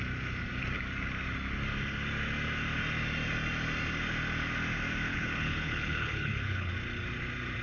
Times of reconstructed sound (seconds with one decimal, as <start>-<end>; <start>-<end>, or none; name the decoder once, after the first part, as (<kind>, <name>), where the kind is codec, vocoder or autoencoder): 5.1-6.7 (codec, HILCodec)